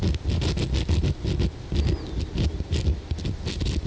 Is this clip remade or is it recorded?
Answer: recorded